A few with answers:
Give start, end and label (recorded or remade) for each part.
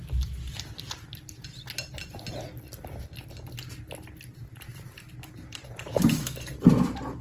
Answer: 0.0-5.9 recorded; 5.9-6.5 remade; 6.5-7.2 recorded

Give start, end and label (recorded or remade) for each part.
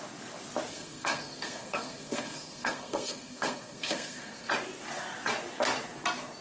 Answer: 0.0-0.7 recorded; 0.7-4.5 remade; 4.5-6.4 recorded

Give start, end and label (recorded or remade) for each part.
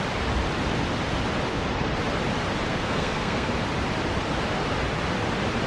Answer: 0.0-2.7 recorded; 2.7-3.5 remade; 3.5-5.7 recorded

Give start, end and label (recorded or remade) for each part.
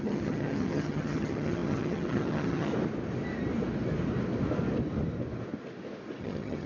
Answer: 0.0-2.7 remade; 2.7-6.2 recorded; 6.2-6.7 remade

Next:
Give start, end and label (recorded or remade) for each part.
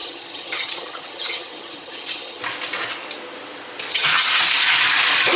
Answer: 0.0-2.4 remade; 2.4-3.9 recorded; 3.9-4.4 remade; 4.4-5.4 recorded